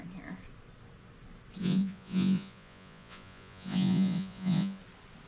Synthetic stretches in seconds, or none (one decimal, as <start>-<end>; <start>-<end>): 1.6-4.8